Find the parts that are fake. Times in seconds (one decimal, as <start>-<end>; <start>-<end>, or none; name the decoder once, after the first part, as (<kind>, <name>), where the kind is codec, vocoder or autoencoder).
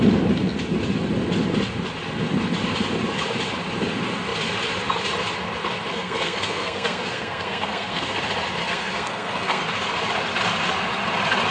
5.9-8.2 (codec, SNAC); 8.6-9.6